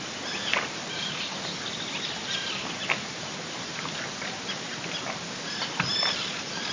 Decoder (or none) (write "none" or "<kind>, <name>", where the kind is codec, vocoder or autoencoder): none